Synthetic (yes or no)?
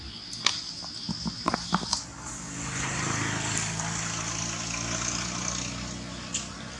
no